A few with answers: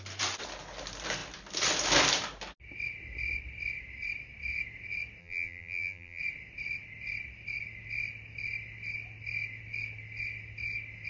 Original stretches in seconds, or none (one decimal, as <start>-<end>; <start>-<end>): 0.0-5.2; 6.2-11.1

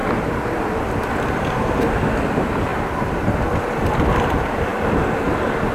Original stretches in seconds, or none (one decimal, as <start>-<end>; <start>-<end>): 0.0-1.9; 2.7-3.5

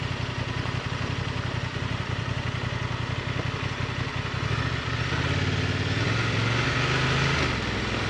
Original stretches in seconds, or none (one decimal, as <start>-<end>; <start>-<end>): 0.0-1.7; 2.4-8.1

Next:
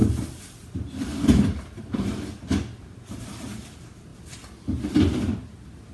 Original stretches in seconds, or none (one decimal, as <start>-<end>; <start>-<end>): 2.1-4.1; 4.9-5.9

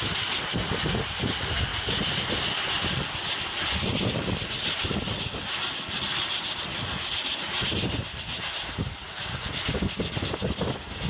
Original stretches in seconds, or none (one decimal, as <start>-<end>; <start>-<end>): 0.0-11.1